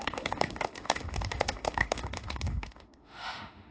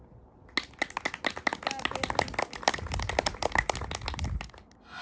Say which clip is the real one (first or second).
second